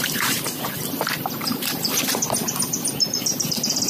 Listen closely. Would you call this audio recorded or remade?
remade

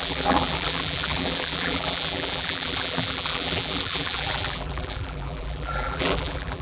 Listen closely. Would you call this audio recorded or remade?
remade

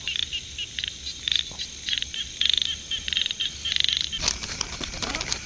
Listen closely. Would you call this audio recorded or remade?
remade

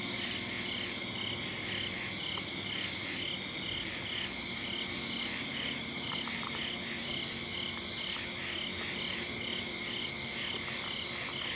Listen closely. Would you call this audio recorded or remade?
recorded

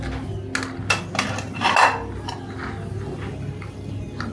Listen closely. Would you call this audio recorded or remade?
recorded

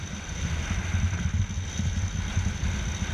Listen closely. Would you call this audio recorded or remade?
recorded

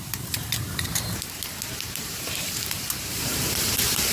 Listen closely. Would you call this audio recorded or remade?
remade